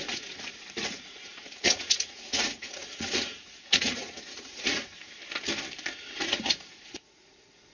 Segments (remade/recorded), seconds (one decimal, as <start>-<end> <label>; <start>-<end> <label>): 0.0-5.2 remade; 5.2-6.1 recorded; 6.1-7.7 remade